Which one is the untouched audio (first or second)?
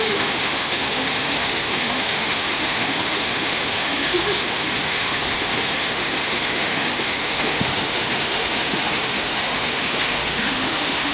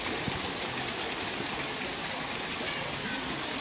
second